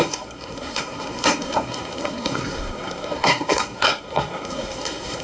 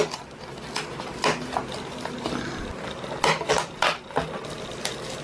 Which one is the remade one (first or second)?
first